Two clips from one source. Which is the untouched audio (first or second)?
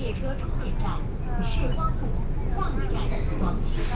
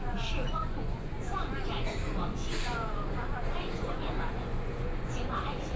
first